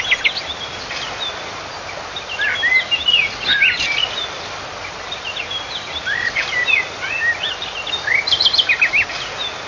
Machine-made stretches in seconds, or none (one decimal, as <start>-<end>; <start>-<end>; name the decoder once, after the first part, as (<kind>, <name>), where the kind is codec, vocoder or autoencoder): 3.2-6.5 (vocoder, BigVGAN v2)